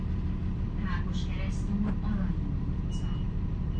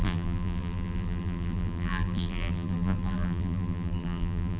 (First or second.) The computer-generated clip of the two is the second